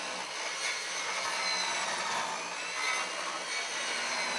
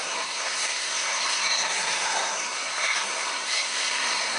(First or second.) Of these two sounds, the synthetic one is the second